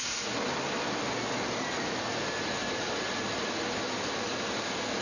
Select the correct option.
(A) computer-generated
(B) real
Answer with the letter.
B